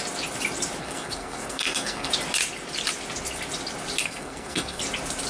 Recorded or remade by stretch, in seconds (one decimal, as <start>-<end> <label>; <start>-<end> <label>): 0.0-0.8 recorded; 0.8-2.1 remade; 2.1-4.0 recorded; 4.0-4.8 remade; 4.8-5.3 recorded